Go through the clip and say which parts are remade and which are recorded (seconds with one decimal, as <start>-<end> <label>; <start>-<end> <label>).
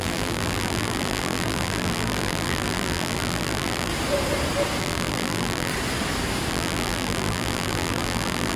0.0-3.9 remade; 3.9-4.8 recorded; 4.8-5.7 remade; 5.7-6.5 recorded; 6.5-8.6 remade